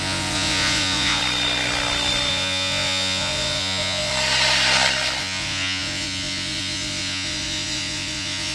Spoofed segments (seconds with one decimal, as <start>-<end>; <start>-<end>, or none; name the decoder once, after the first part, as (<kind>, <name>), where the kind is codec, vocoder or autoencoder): 0.0-1.2 (vocoder, Vocos); 2.3-4.1; 5.2-8.5